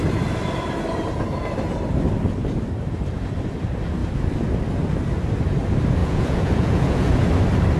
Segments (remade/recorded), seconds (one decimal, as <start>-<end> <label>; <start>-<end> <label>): 0.0-6.0 recorded; 6.0-7.3 remade; 7.3-7.8 recorded